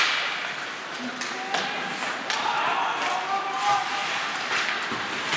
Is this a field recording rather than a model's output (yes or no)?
yes